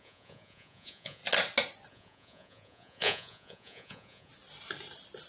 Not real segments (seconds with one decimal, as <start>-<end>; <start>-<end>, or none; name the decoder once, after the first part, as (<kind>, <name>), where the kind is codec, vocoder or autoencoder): 0.0-1.2 (vocoder, Vocos); 1.9-4.3